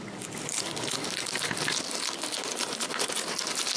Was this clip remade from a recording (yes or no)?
no